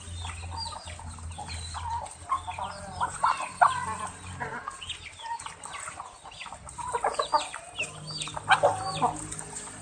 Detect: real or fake real